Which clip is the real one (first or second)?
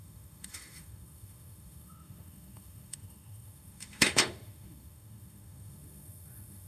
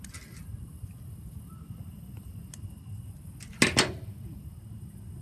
second